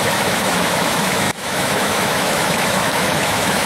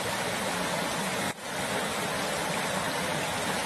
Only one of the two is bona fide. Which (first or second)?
second